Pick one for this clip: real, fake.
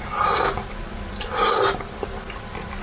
real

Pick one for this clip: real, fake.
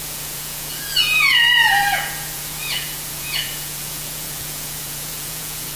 fake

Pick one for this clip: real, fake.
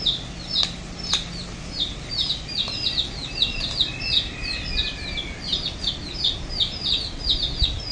real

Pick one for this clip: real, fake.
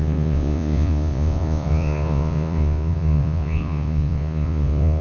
fake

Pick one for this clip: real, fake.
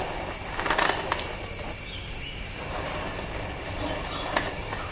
real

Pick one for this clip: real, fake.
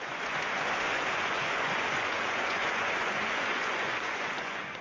fake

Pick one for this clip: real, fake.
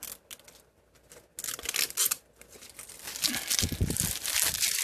real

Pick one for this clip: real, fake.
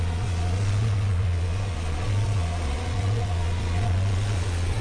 fake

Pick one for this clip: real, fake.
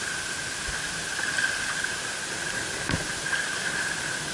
real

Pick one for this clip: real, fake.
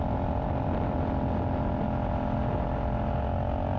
real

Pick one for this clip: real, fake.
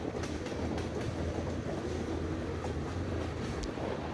real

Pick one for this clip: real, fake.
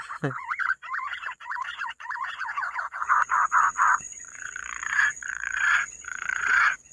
fake